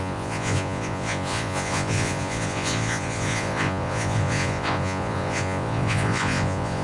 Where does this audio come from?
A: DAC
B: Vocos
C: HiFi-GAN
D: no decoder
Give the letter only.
B